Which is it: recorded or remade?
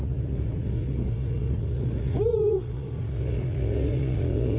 remade